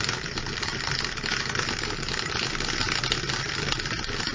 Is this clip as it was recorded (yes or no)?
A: yes